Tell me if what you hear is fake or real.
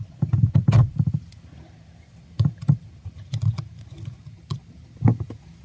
real